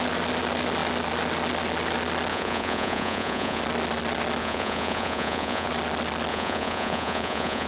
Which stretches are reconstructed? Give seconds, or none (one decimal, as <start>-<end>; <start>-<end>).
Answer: 2.3-3.6; 4.4-5.7; 6.3-7.7

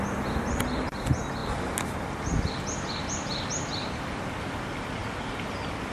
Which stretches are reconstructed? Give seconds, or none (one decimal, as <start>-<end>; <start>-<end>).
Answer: none

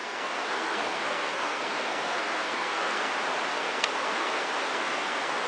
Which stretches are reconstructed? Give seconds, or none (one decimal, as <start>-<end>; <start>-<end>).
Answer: 0.0-3.1; 3.5-5.5

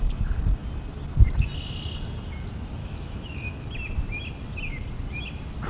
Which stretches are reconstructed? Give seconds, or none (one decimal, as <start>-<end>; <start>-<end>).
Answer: 2.8-3.7

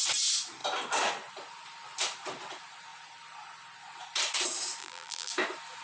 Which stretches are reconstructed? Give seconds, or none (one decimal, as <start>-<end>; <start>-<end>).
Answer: 4.8-5.3

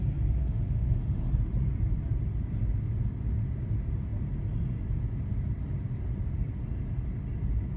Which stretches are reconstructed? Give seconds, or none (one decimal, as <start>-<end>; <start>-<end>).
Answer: 0.4-1.2

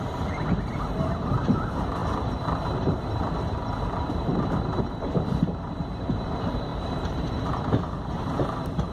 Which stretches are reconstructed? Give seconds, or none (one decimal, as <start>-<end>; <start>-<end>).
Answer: 0.0-2.0; 2.9-8.9